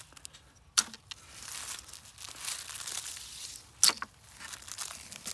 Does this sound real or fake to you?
real